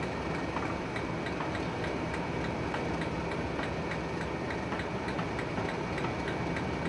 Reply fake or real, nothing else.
real